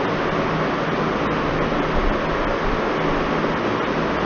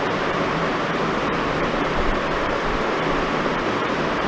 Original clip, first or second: first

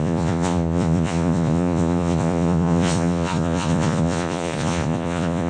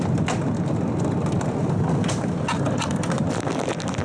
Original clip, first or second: second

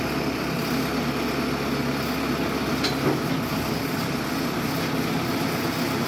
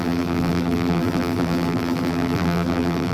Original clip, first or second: first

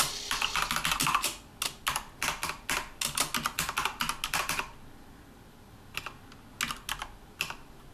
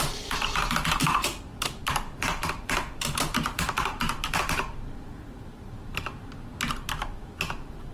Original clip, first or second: first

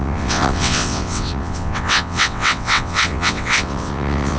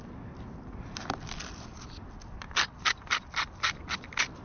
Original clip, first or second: second